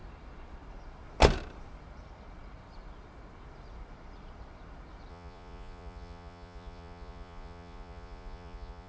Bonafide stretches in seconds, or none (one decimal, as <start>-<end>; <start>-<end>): 0.0-5.1